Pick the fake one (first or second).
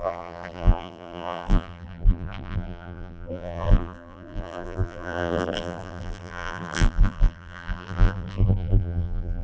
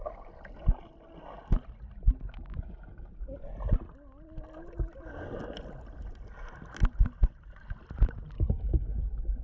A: first